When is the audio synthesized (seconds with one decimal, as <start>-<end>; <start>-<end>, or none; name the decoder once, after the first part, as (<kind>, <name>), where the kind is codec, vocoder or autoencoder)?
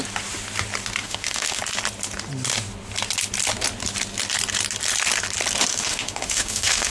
1.0-1.6 (autoencoder, DAC-VAE); 5.7-6.9